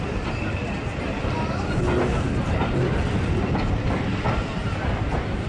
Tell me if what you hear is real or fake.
real